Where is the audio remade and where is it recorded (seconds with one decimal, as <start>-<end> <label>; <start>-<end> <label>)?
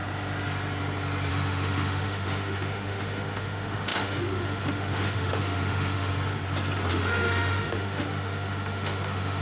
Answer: 0.0-1.3 recorded; 1.3-6.1 remade; 6.1-6.9 recorded; 6.9-9.4 remade